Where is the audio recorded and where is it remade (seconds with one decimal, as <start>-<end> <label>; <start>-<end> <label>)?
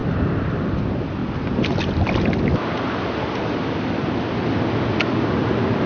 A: 0.0-5.9 recorded